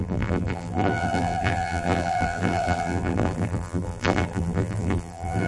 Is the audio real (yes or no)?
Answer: no